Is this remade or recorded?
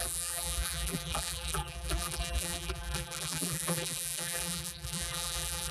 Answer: remade